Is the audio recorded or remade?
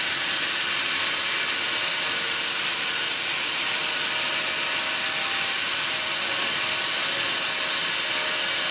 recorded